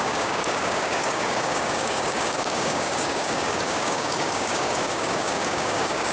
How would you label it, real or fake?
fake